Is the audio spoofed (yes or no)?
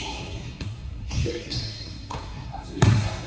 yes